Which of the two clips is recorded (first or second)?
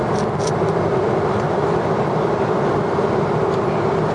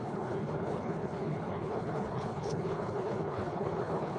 first